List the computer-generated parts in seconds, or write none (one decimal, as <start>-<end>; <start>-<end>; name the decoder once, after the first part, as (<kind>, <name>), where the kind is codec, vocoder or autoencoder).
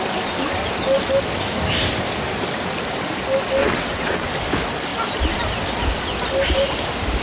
3.6-4.3 (vocoder, WaveNeXt)